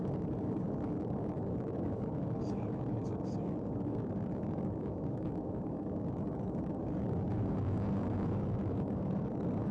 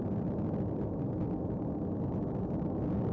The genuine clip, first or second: second